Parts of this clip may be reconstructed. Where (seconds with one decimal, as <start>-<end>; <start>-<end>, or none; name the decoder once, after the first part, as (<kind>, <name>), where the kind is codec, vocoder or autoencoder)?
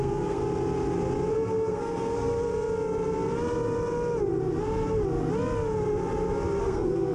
0.0-0.4 (codec, SNAC); 1.3-2.3; 6.6-7.1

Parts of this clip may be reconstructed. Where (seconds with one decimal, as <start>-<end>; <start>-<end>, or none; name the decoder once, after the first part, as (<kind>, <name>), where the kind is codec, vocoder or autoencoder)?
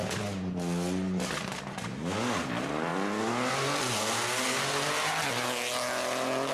none